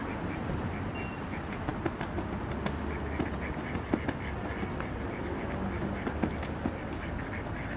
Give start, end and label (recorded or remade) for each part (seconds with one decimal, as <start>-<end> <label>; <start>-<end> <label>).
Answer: 0.0-7.8 recorded